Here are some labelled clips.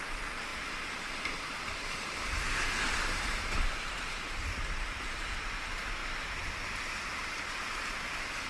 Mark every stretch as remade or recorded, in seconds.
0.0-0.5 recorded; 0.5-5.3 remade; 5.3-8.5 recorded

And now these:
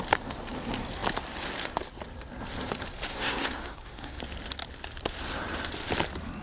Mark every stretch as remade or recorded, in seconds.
0.0-3.1 recorded; 3.1-4.2 remade; 4.2-6.4 recorded

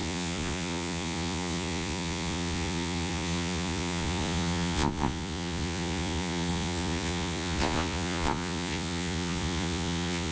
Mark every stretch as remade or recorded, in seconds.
0.0-10.3 remade

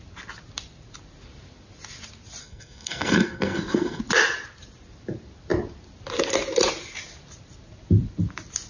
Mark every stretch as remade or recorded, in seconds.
0.0-2.4 recorded; 2.4-4.0 remade; 4.0-8.7 recorded

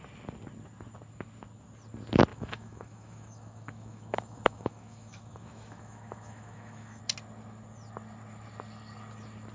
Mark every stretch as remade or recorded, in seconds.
0.0-2.3 recorded; 2.3-7.0 remade; 7.0-9.5 recorded

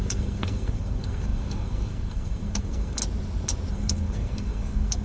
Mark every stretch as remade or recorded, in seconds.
0.0-3.0 remade; 3.0-3.7 recorded; 3.7-5.0 remade

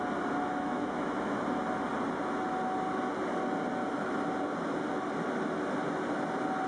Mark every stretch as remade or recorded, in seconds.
0.0-0.5 recorded; 0.5-1.4 remade; 1.4-6.7 recorded

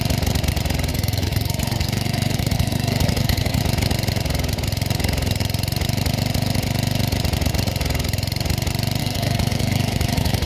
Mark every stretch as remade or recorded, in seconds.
0.0-0.9 recorded; 0.9-3.6 remade; 3.6-9.0 recorded; 9.0-10.5 remade